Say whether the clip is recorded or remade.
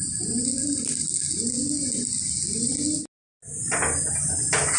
recorded